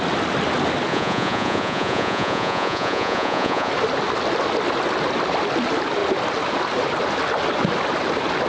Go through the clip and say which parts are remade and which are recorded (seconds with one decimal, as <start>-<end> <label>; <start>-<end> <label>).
0.0-0.9 recorded; 0.9-3.7 remade; 3.7-8.5 recorded